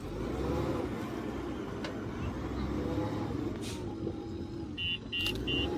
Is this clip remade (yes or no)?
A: no